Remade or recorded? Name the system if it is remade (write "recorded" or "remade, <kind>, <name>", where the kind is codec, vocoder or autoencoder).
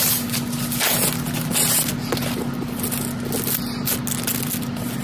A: recorded